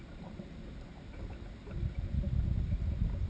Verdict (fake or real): real